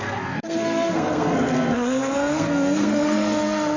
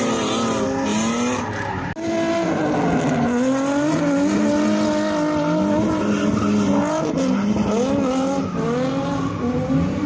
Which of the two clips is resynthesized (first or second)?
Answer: first